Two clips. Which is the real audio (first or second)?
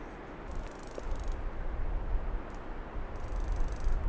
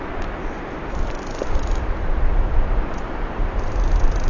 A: first